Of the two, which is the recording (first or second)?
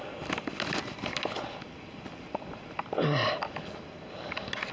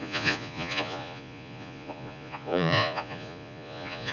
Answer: first